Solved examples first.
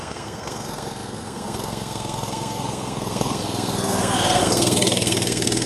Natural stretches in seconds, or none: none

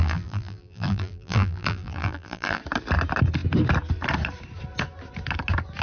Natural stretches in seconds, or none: 2.6-5.8

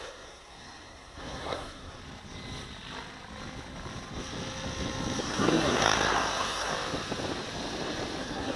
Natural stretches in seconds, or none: 2.0-5.2; 6.7-8.2

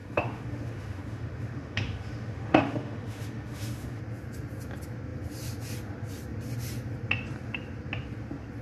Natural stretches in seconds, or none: 4.0-8.6

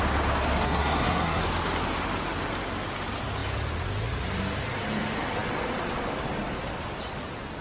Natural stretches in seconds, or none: 0.0-0.6; 1.4-7.6